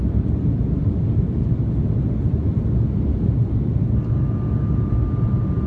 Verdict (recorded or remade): recorded